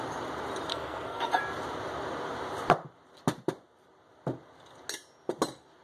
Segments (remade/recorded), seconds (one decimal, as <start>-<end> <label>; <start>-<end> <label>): 0.0-0.7 recorded; 0.7-1.4 remade; 1.4-5.8 recorded